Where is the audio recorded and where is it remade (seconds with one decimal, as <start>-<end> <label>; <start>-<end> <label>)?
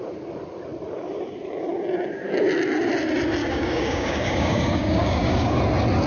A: 0.0-3.4 recorded; 3.4-5.6 remade; 5.6-6.1 recorded